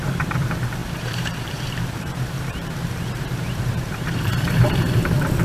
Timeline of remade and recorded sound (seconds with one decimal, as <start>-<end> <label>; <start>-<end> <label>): 0.0-5.4 remade

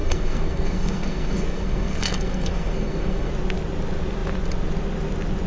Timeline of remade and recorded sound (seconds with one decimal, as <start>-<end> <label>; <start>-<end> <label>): 0.0-3.3 remade; 3.3-5.5 recorded

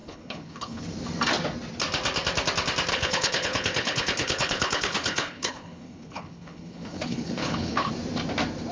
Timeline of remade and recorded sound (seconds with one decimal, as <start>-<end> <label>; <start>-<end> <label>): 0.0-0.8 remade; 0.8-2.9 recorded; 2.9-7.9 remade; 7.9-8.7 recorded

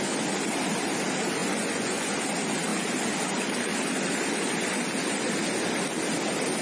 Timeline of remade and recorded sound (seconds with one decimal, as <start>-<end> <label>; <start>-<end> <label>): 0.0-1.4 recorded; 1.4-2.1 remade; 2.1-6.6 recorded